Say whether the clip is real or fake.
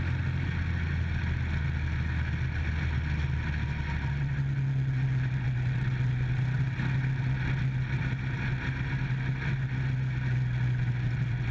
real